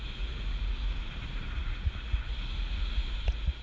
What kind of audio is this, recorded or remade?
remade